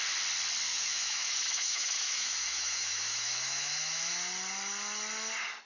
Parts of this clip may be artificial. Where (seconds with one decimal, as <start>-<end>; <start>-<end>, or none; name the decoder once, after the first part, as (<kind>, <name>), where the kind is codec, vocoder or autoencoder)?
0.7-4.1 (autoencoder, DAC-VAE)